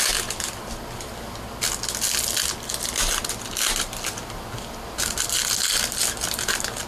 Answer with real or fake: real